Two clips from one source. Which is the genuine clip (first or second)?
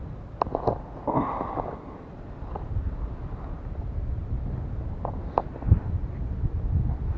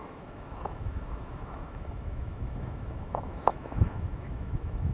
first